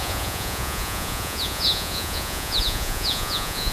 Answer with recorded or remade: remade